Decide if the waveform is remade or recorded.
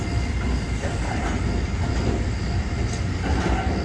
recorded